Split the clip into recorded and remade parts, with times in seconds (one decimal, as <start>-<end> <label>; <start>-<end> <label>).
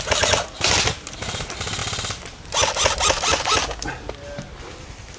0.0-5.2 recorded